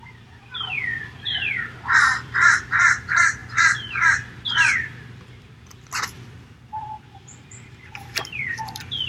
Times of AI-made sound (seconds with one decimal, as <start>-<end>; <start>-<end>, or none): 0.0-9.1